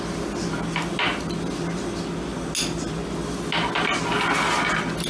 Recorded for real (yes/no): yes